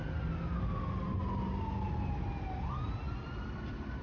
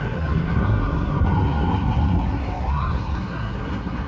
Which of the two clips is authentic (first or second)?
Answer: first